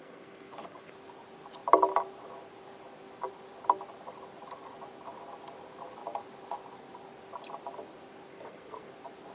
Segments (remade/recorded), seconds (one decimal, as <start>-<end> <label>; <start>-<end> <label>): 0.0-0.9 remade; 0.9-8.3 recorded; 8.3-8.9 remade; 8.9-9.3 recorded